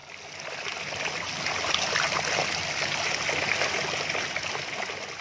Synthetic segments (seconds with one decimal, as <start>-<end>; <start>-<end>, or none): none